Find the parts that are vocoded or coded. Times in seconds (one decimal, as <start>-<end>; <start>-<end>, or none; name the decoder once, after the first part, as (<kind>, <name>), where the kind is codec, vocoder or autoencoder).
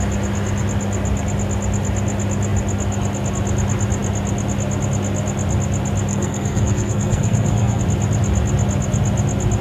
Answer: 6.1-7.8 (codec, SNAC)